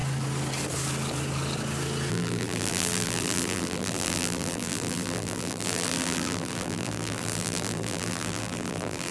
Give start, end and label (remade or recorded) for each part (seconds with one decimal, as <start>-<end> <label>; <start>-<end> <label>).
0.0-2.1 recorded; 2.1-9.1 remade